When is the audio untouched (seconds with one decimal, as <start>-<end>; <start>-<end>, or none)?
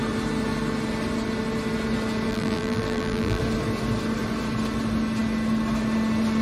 0.0-2.3; 3.4-6.4